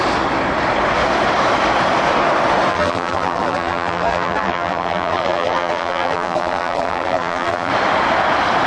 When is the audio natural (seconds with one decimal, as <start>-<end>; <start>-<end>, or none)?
0.0-2.7; 7.7-8.7